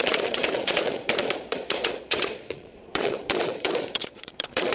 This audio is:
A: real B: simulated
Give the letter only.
B